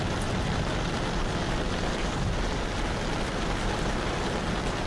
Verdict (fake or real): real